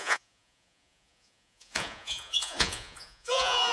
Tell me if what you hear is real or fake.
fake